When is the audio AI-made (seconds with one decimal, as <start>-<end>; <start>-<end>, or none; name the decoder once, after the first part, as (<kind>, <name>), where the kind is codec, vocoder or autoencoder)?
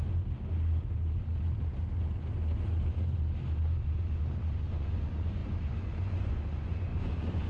4.5-7.5 (vocoder, Vocos)